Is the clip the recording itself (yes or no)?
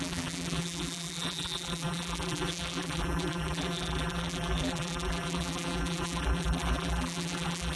no